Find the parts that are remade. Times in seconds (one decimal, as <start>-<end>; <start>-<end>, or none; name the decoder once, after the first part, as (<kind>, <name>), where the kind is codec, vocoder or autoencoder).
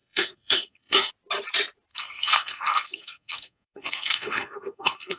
0.0-1.1 (codec, SNAC); 1.9-5.2